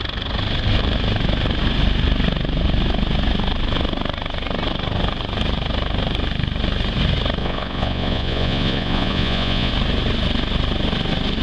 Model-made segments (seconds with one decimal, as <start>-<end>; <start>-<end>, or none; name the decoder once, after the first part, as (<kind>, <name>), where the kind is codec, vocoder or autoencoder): 7.4-9.7 (vocoder, Vocos)